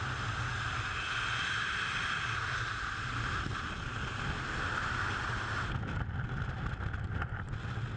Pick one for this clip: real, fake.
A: real